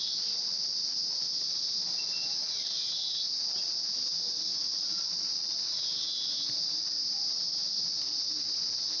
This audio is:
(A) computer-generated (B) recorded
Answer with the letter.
B